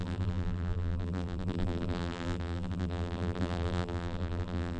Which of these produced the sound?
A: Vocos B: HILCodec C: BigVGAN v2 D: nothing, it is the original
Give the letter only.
C